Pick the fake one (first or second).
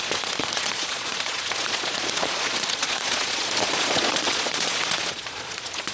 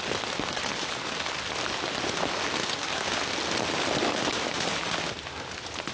first